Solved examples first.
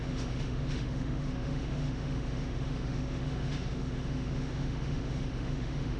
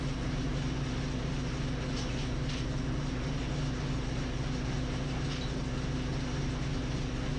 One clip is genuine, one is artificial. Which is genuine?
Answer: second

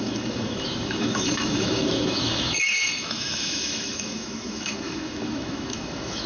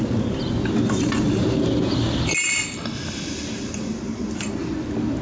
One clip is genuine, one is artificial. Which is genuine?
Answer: second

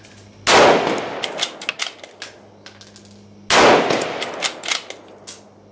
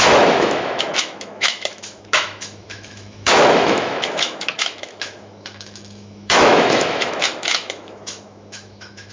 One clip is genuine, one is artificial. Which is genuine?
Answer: first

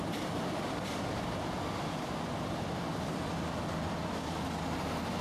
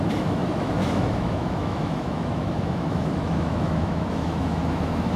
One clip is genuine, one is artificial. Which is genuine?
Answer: first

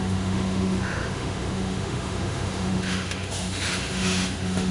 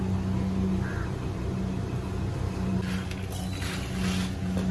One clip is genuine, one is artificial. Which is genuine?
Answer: second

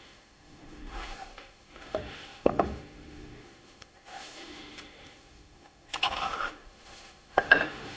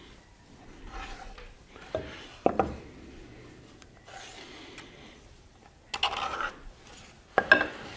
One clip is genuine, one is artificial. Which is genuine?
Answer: second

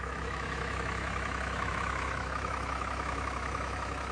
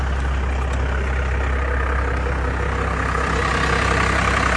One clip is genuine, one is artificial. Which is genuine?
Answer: second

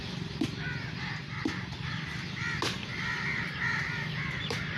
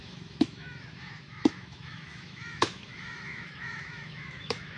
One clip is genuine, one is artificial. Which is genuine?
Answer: first